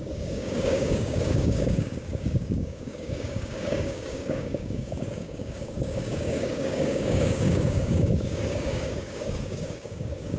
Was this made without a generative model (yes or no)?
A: no